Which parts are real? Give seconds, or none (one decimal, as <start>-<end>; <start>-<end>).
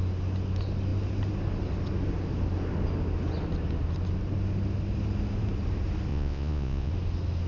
0.0-6.1; 6.9-7.5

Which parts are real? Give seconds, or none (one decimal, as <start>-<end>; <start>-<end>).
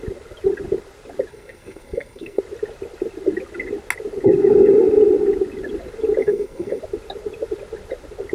0.0-1.3; 2.4-6.2; 6.8-8.3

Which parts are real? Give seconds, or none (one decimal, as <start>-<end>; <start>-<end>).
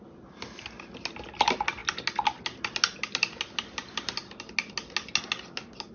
0.0-5.9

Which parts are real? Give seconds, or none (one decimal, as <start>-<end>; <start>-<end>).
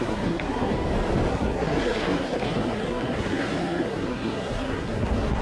0.7-1.3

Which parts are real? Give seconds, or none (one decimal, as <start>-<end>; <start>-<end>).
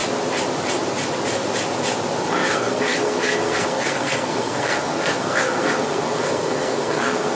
0.0-2.2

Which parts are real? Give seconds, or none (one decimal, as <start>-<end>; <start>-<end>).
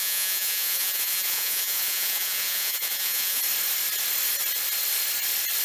3.4-5.6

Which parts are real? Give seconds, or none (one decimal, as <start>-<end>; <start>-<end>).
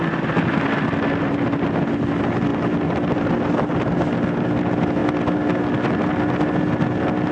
0.0-2.5; 3.3-7.3